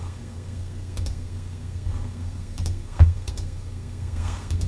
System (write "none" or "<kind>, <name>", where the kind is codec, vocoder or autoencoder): codec, SNAC